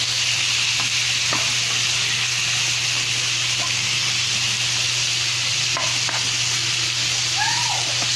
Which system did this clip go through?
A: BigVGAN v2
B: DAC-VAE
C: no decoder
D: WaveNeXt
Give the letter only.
C